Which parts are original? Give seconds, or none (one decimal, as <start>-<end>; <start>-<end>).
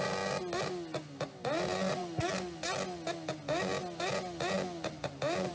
0.0-5.5